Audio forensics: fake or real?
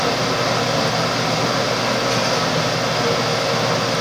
real